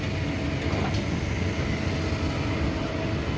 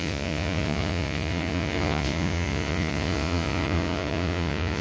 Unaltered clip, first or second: first